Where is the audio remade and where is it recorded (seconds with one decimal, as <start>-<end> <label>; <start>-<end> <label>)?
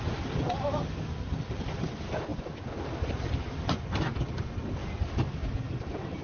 0.0-6.2 recorded